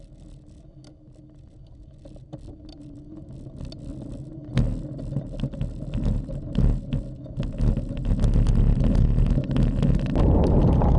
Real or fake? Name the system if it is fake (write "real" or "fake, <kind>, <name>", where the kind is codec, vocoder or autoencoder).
real